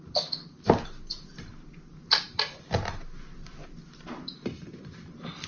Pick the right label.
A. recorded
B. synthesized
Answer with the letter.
A